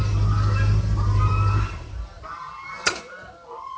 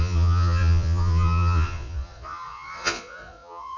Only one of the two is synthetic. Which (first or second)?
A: second